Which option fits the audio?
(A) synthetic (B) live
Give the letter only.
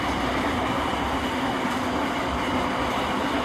B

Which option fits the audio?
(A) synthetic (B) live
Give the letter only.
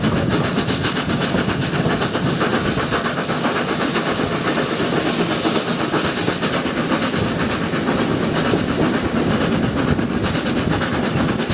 B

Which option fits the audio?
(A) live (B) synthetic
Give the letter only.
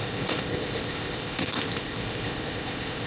B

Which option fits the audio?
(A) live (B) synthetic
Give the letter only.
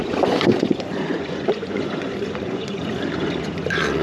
B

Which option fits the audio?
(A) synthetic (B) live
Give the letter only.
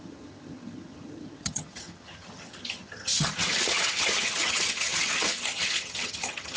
A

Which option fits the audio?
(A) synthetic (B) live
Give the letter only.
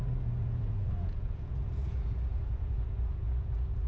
A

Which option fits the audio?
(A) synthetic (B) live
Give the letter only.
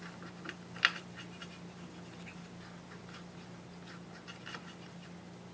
B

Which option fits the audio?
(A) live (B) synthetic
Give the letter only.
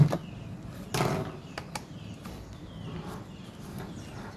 A